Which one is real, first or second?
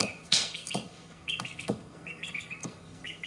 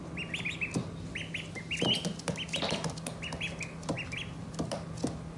second